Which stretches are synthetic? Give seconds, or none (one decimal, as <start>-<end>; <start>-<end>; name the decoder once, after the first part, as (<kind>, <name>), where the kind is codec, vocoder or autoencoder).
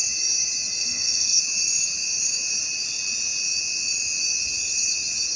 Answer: 0.8-1.4 (codec, SNAC)